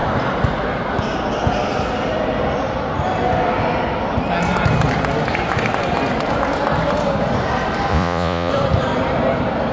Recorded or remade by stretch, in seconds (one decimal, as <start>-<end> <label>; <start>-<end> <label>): 0.0-7.9 recorded; 7.9-8.5 remade; 8.5-9.7 recorded